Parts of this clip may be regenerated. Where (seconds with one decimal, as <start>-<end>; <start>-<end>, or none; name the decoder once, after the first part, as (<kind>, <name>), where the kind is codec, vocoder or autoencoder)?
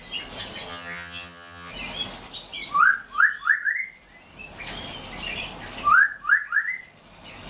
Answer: 0.7-1.7 (vocoder, HiFi-GAN)